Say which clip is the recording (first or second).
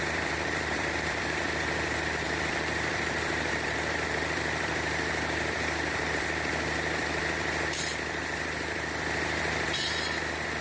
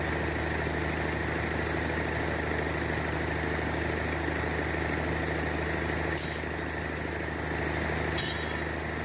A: second